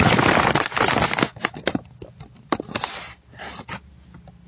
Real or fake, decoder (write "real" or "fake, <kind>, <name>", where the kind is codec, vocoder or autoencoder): real